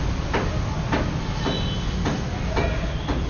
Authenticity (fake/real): real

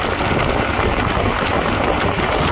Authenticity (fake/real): real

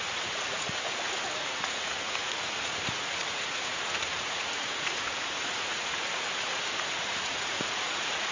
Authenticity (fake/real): fake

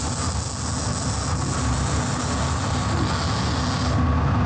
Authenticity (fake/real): real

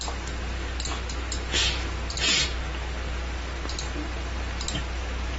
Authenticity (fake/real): real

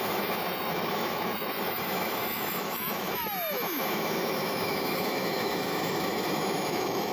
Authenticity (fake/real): fake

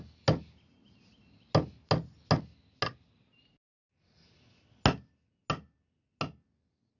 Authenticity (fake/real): real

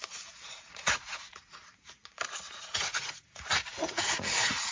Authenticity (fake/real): fake